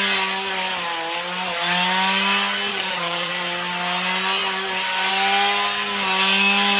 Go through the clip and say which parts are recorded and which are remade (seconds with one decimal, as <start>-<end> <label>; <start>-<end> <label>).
0.0-2.7 recorded; 2.7-3.3 remade; 3.3-6.8 recorded